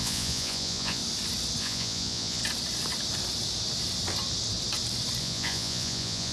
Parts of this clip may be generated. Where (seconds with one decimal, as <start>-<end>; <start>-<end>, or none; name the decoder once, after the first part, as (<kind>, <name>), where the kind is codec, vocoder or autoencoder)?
0.0-1.0 (vocoder, Vocos); 1.6-2.4; 5.2-6.3